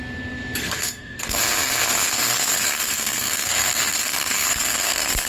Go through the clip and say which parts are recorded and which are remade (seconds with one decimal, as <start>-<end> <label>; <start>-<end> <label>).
0.0-0.6 recorded; 0.6-1.4 remade; 1.4-1.8 recorded; 1.8-5.3 remade